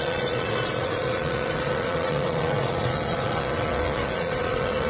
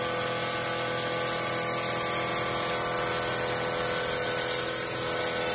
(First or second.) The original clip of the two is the second